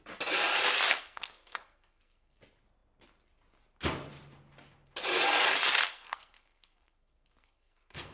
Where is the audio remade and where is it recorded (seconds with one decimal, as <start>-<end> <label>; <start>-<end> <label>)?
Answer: 0.0-0.9 recorded; 0.9-2.4 remade; 2.4-5.9 recorded; 5.9-8.1 remade